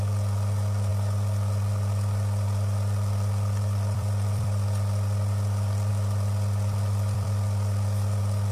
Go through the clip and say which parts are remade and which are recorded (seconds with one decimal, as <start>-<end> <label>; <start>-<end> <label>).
0.0-8.5 remade